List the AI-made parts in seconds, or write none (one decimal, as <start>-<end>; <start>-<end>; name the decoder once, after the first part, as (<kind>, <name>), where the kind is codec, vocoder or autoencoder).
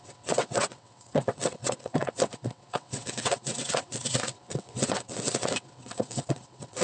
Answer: 0.0-6.8 (vocoder, WaveNeXt)